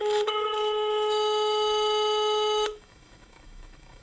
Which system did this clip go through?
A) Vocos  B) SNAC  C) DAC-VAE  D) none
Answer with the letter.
C